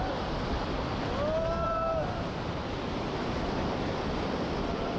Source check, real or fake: real